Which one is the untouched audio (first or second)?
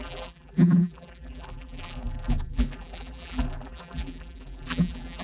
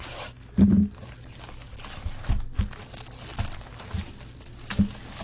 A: second